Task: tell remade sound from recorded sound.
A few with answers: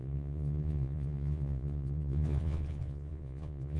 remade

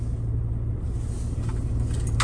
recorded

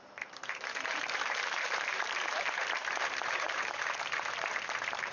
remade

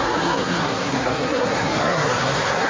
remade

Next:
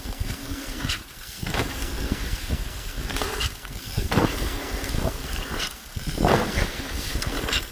remade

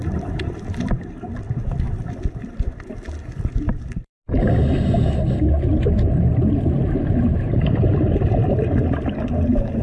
recorded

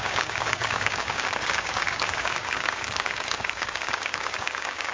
remade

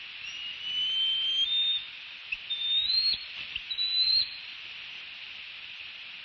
recorded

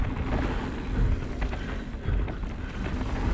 recorded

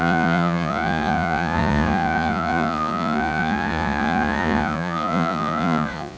remade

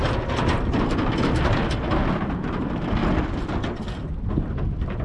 recorded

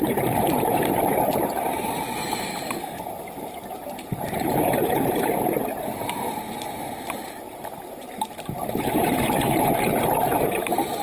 remade